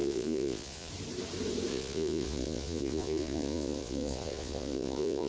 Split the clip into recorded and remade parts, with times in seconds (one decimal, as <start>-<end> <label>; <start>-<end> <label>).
0.0-0.9 remade; 0.9-1.7 recorded; 1.7-5.3 remade